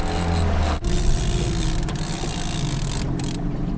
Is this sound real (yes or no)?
yes